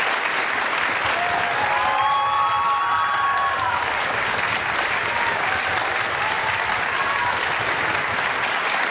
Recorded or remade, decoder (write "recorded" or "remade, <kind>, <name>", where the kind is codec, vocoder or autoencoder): recorded